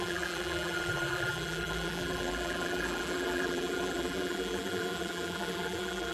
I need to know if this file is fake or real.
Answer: fake